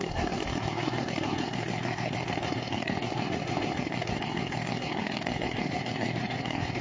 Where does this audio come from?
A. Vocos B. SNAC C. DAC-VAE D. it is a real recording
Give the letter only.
B